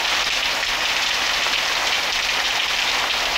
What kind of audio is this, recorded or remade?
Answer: recorded